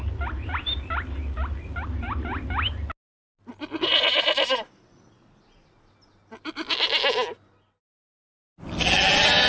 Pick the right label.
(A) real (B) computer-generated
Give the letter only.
A